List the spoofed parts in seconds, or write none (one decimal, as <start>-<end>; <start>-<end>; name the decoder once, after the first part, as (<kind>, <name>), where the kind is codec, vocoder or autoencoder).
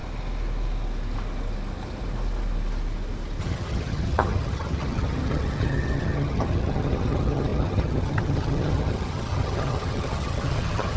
3.4-11.0 (vocoder, HiFi-GAN)